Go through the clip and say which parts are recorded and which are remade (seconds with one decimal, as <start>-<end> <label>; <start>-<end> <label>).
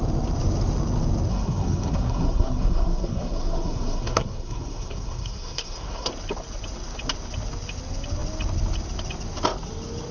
0.0-1.3 recorded; 1.3-6.1 remade; 6.1-10.1 recorded